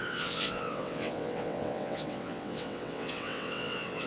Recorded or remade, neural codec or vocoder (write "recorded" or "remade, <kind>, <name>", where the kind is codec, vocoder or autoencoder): remade, vocoder, WaveNeXt